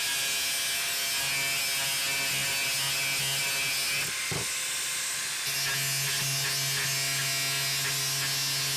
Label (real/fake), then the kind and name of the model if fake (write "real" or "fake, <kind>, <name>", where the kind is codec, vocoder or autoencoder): real